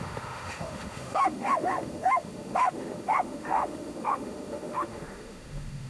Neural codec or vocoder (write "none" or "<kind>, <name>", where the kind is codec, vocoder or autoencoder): autoencoder, DAC-VAE